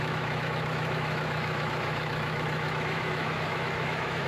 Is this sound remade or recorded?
remade